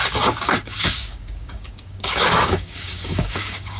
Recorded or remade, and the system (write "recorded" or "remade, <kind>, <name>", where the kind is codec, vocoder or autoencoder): remade, codec, DAC